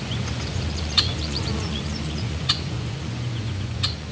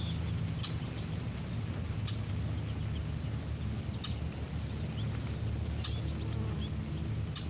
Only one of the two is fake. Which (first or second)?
first